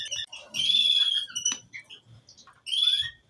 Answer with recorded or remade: recorded